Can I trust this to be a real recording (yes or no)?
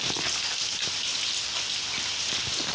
yes